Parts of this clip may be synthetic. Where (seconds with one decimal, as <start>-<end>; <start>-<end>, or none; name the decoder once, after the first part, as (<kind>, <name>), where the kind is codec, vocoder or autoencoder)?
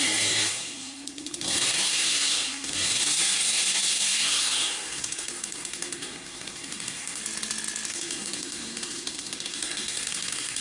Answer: 0.0-7.2 (codec, SNAC); 7.9-10.6